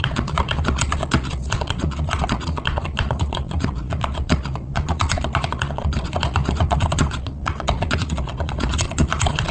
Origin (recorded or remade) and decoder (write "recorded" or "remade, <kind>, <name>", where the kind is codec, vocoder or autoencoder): remade, vocoder, Vocos